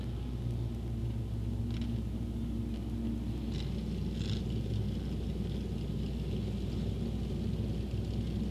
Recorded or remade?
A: recorded